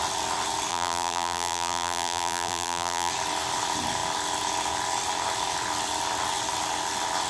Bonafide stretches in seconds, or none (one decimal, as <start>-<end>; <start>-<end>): 0.0-0.7; 3.1-7.3